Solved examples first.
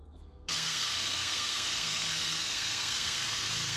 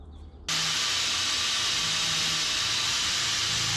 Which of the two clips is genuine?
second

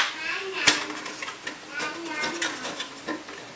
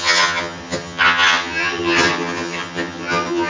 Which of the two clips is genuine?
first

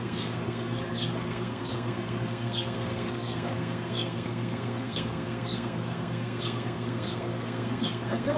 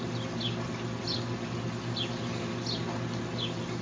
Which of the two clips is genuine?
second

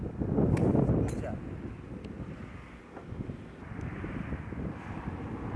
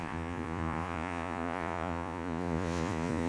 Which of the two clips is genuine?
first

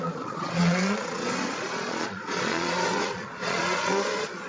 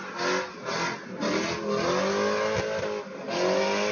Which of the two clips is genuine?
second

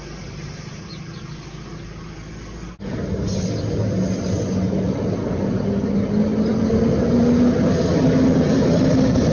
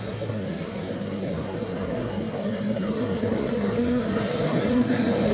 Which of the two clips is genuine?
first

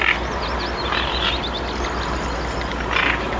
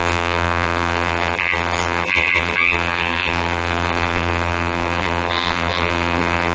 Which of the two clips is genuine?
first